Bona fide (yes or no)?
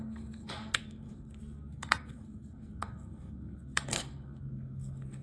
no